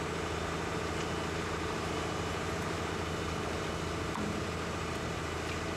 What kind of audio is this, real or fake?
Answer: real